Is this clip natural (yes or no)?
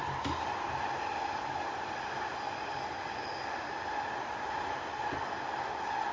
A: yes